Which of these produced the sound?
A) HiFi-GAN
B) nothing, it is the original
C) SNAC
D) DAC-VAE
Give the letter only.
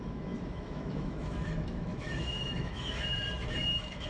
D